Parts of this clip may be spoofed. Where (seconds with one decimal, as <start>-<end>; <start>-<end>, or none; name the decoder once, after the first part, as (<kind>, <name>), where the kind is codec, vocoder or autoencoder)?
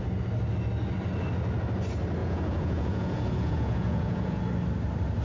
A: 2.2-4.4 (vocoder, Vocos)